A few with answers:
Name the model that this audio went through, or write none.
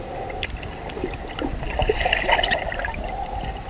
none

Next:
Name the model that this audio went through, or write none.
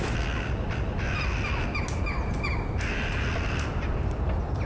none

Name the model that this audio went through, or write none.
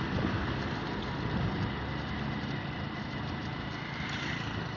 none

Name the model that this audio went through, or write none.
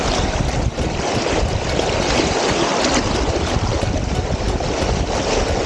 none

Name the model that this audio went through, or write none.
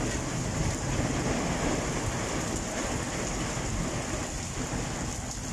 none